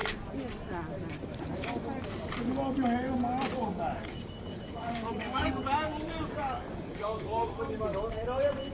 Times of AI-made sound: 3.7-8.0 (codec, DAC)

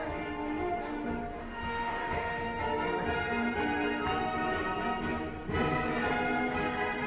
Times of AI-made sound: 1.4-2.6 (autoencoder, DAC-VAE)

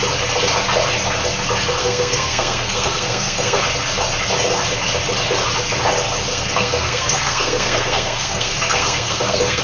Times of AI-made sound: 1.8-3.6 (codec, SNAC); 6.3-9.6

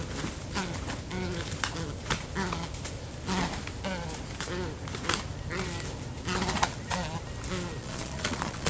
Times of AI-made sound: 7.8-8.7 (vocoder, Vocos)